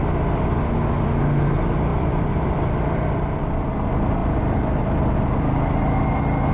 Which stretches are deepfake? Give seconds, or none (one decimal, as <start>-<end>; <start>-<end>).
1.9-2.5; 4.2-5.3

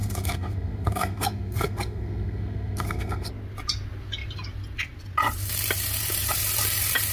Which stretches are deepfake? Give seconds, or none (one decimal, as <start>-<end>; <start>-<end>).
0.0-3.3